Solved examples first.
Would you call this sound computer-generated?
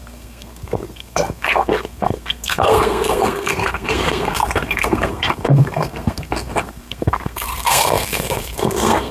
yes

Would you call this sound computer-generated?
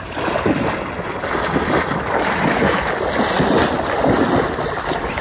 no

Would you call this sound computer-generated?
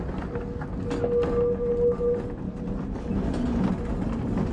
no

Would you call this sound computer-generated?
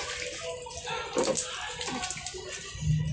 no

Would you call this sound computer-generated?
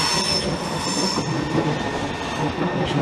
no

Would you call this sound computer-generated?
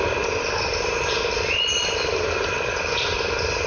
no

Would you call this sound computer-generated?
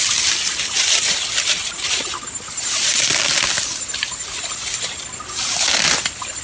no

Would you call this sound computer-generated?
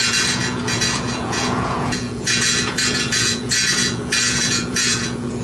yes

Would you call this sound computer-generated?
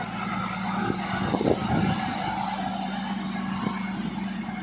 no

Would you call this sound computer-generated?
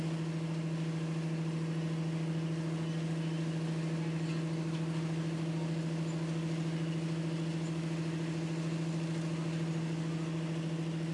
no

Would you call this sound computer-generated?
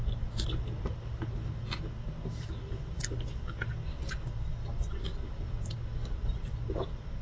no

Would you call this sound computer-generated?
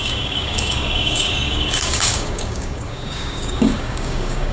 yes